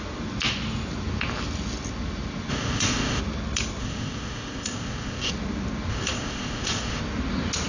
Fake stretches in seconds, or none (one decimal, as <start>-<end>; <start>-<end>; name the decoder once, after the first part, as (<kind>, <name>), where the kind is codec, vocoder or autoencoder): 2.5-3.2 (codec, ZipCodec); 3.8-5.3; 5.9-7.0